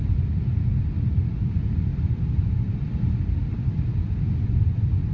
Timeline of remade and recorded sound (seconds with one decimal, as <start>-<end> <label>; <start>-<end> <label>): 0.0-5.1 recorded